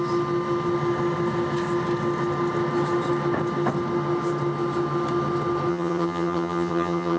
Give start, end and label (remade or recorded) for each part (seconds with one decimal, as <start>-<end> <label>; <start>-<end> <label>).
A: 0.0-5.7 recorded; 5.7-7.2 remade